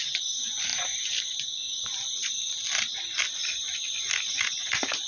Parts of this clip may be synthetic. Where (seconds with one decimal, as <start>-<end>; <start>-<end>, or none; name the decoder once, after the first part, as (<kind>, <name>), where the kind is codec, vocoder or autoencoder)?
none